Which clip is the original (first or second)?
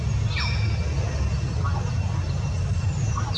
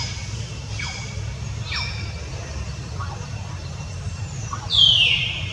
first